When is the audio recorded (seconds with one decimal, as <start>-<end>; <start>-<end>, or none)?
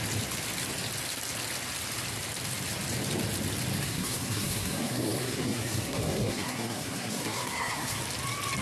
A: 0.0-3.8; 8.0-8.6